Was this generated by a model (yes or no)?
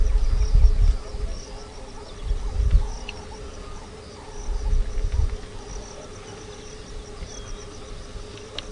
no